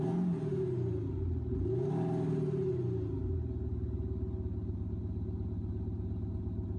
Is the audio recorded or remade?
recorded